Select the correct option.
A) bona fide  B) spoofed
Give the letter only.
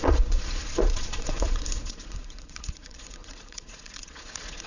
B